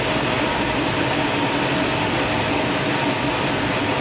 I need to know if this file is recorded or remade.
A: recorded